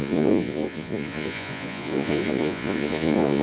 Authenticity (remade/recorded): remade